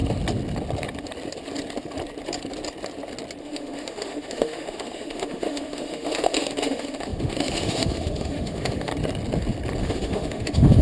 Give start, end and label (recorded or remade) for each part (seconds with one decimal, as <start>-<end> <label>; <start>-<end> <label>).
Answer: 0.0-3.4 recorded; 3.4-8.9 remade; 8.9-9.8 recorded; 9.8-10.8 remade